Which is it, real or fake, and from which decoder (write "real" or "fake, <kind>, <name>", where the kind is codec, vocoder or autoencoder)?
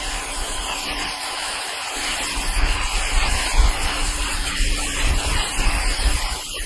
fake, vocoder, BigVGAN v2